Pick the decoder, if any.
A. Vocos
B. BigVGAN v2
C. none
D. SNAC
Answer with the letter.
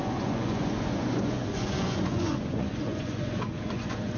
A